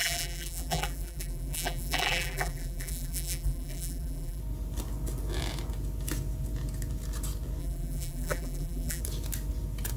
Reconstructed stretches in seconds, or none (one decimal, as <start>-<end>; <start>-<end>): 0.0-4.4; 7.6-9.0

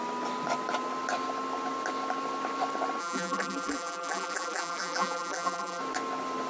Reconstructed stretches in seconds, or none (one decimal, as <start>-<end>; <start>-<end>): 3.0-5.8

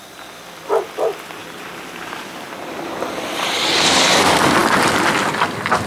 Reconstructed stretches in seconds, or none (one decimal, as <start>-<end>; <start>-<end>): 1.4-3.6

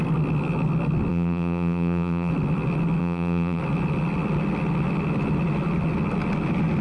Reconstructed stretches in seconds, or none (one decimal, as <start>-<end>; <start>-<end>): 1.1-2.3; 3.0-3.6

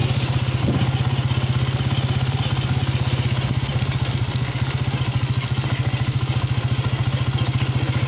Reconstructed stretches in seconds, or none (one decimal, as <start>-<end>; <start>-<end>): none

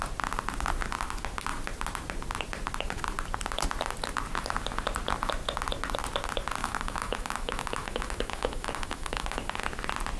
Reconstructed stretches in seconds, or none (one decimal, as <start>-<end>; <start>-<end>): 6.6-9.6

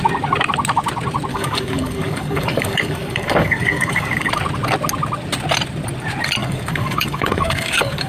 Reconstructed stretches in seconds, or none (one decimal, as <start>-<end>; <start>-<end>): 1.3-4.3; 6.4-8.1